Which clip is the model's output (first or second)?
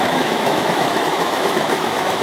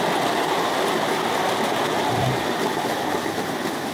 first